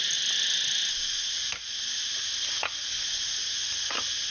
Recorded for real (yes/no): yes